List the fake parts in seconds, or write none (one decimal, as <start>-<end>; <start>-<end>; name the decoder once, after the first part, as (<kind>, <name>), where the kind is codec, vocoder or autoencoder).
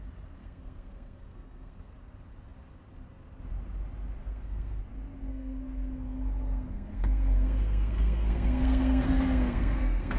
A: 0.4-1.9 (codec, SNAC); 4.2-4.8; 5.3-10.2